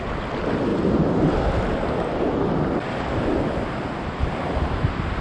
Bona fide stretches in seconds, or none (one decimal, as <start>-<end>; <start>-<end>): 0.0-5.2